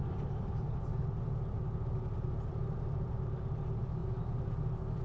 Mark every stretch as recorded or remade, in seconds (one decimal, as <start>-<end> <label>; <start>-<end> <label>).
0.0-0.9 remade; 0.9-2.5 recorded; 2.5-4.0 remade; 4.0-5.0 recorded